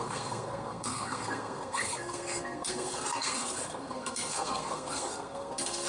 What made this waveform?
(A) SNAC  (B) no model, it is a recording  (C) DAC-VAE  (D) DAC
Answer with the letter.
A